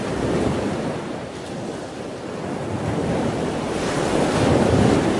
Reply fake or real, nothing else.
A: real